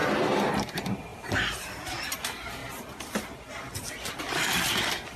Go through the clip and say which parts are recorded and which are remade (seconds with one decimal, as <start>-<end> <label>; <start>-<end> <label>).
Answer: 0.0-1.1 recorded; 1.1-1.8 remade; 1.8-5.2 recorded